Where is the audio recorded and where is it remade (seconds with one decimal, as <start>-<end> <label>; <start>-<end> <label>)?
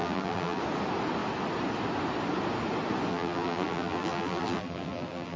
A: 0.0-0.6 remade; 0.6-3.1 recorded; 3.1-5.4 remade